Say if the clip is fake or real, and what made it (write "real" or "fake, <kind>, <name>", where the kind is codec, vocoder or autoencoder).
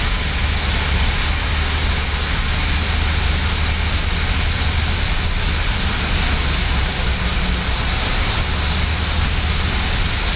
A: real